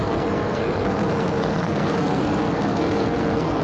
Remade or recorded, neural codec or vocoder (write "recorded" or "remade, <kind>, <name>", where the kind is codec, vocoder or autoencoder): remade, codec, SNAC